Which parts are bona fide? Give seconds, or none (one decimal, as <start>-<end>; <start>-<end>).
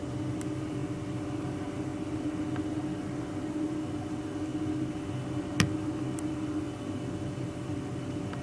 0.0-8.4